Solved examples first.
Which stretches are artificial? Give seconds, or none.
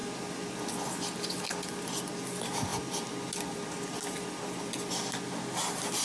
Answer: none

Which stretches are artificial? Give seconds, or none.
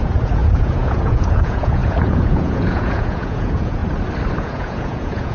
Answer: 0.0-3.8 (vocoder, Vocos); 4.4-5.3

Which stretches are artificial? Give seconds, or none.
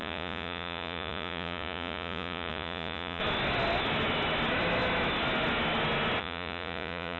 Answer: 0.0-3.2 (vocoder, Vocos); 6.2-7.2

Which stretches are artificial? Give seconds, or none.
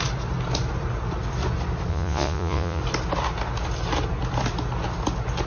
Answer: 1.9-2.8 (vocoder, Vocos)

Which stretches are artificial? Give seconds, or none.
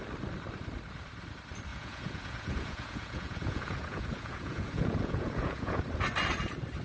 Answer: 1.7-5.8 (vocoder, Vocos)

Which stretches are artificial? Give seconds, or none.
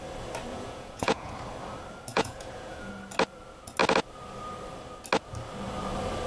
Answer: 0.5-1.3 (vocoder, Vocos); 2.1-2.9